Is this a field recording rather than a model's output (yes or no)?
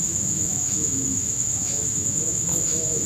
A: no